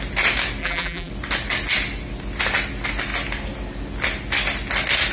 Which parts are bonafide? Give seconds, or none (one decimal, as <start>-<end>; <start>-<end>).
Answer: 0.0-0.6; 1.1-5.1